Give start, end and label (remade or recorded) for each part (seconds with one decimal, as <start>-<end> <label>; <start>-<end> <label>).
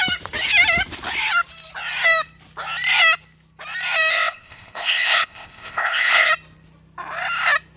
0.0-4.1 recorded; 4.1-6.3 remade; 6.3-7.8 recorded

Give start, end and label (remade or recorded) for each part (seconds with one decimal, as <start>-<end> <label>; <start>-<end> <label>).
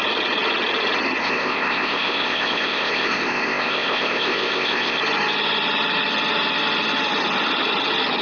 0.0-1.2 recorded; 1.2-5.0 remade; 5.0-8.2 recorded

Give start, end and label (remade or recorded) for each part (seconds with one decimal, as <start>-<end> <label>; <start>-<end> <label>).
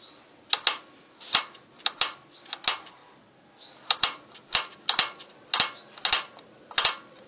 0.0-7.3 recorded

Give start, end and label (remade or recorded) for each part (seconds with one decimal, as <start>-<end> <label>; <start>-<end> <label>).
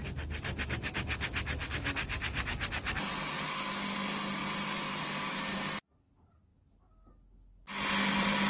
0.0-8.5 recorded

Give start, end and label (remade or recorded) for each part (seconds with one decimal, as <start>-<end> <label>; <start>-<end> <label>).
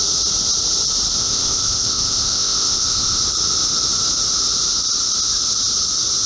0.0-1.2 recorded; 1.2-3.2 remade; 3.2-6.3 recorded